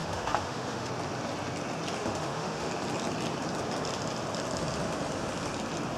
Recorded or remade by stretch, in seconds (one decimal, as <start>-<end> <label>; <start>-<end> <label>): 0.0-0.9 remade; 0.9-2.0 recorded; 2.0-2.7 remade; 2.7-6.0 recorded